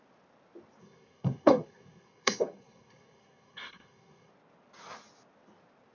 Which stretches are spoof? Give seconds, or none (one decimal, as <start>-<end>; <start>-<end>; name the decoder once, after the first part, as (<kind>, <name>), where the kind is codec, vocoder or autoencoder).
0.8-4.3 (codec, SNAC)